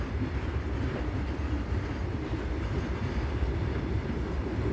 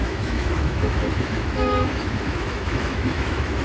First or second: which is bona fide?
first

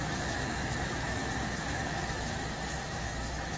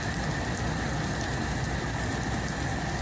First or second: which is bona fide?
second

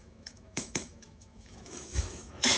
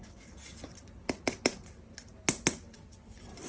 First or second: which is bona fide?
second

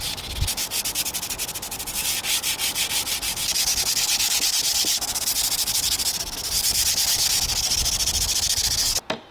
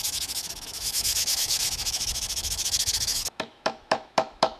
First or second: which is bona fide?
first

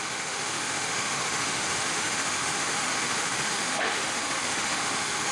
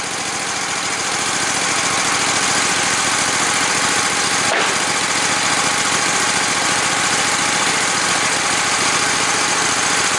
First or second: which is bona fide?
second